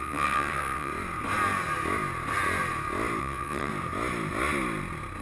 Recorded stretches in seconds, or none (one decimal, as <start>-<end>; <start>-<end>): 0.9-3.2; 3.7-5.2